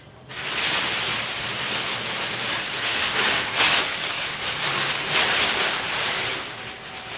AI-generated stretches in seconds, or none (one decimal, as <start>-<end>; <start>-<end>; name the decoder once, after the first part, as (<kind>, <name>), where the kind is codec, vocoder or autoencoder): 2.9-5.0 (codec, DAC)